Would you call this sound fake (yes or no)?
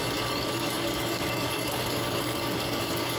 yes